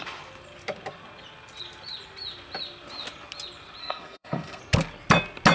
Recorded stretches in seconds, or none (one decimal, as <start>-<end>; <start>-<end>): 0.0-3.8; 4.6-5.5